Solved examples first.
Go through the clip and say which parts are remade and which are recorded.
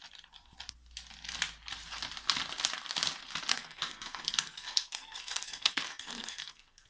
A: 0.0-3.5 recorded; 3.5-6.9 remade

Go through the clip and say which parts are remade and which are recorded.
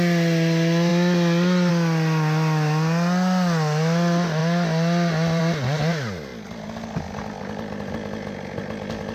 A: 0.0-9.1 recorded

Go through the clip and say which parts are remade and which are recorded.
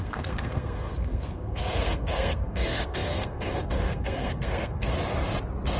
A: 0.0-4.9 remade; 4.9-5.8 recorded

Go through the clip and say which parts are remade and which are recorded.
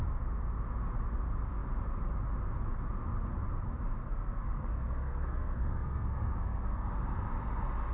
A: 0.0-4.0 recorded; 4.0-6.9 remade; 6.9-7.9 recorded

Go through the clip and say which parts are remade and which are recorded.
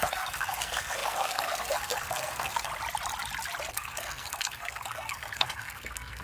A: 0.0-2.7 remade; 2.7-3.7 recorded; 3.7-6.2 remade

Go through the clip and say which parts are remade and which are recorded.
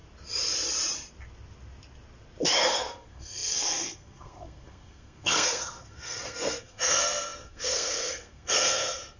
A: 0.0-2.6 recorded; 2.6-9.2 remade